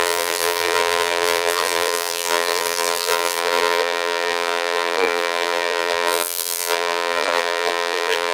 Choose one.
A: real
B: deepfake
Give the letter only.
B